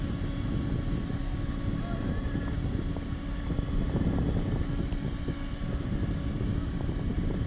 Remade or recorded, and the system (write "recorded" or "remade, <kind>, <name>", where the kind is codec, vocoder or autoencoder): recorded